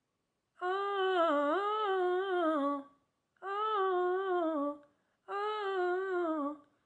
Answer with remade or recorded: recorded